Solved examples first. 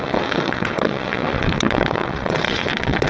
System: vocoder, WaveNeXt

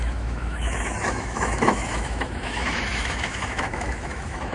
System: autoencoder, DAC-VAE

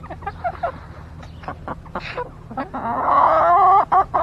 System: none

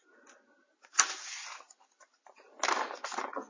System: none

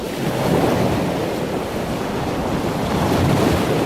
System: none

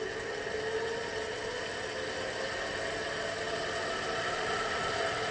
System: none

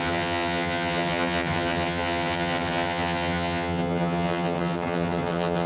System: vocoder, HiFi-GAN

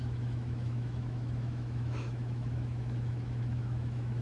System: autoencoder, DAC-VAE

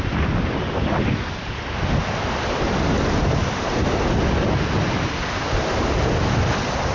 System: none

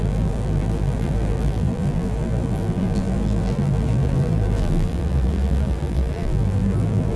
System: vocoder, BigVGAN v2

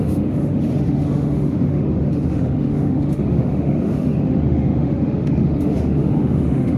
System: autoencoder, DAC-VAE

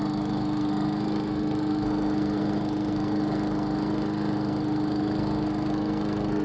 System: codec, SNAC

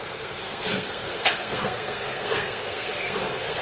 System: codec, SNAC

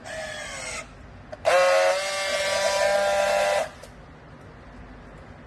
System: none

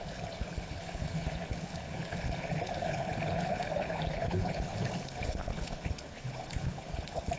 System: codec, HILCodec